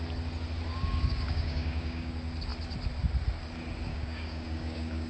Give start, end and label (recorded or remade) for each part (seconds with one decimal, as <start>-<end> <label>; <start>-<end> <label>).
0.0-0.7 recorded; 0.7-2.1 remade; 2.1-3.9 recorded; 3.9-5.1 remade